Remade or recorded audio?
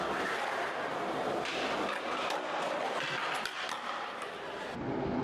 recorded